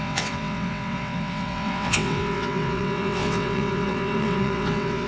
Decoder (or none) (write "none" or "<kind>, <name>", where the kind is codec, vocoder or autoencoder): vocoder, WaveNeXt